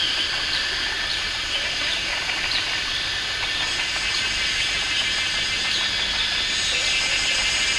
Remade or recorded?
recorded